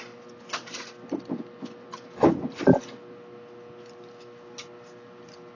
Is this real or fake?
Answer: real